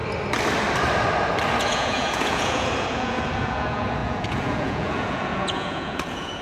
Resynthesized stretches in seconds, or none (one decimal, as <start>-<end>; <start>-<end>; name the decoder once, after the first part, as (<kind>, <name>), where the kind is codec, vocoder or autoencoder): 1.6-6.4 (vocoder, Vocos)